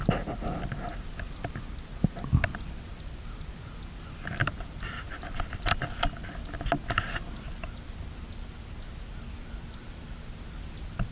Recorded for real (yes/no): yes